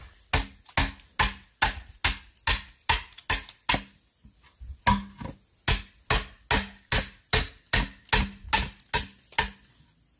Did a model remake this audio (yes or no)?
no